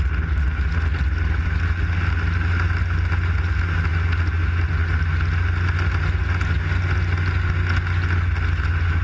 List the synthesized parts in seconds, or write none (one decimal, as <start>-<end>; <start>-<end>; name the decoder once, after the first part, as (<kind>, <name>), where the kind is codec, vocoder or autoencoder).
none